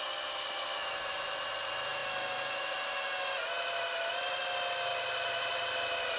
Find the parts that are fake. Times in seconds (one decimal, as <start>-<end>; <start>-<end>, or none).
none